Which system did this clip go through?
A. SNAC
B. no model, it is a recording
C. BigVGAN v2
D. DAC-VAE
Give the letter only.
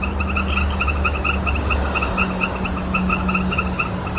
B